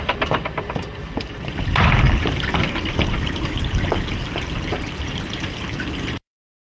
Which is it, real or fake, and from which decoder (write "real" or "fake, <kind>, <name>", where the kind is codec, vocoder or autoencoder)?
fake, vocoder, BigVGAN v2